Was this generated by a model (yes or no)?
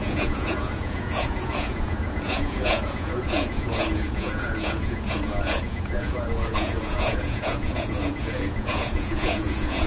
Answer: yes